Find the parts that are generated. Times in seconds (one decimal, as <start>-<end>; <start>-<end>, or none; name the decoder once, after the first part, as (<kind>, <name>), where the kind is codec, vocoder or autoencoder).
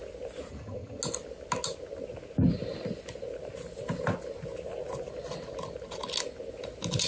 0.5-1.0 (vocoder, HiFi-GAN)